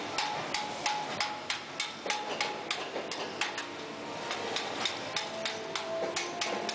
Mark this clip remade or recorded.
recorded